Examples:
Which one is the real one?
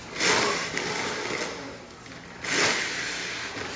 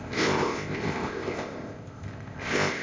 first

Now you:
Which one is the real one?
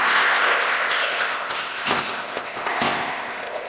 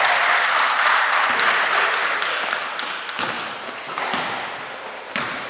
second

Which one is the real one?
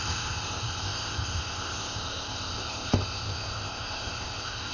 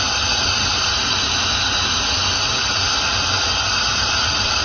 second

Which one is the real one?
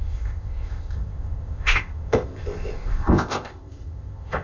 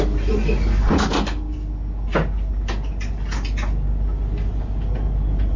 second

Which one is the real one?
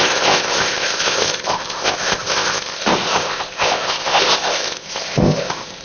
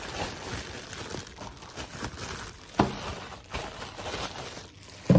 second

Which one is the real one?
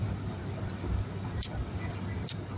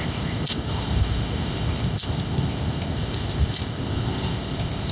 first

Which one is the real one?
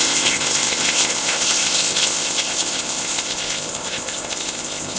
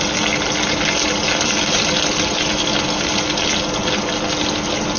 second